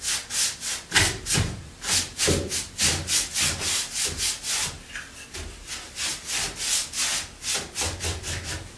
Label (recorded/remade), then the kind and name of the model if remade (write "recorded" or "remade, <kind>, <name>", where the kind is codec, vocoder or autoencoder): recorded